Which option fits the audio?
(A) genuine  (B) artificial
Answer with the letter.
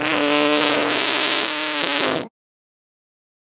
A